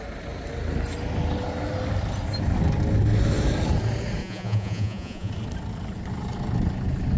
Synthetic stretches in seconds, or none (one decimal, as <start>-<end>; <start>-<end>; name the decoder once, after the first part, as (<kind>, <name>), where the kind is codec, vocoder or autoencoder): 4.2-5.3 (vocoder, Vocos)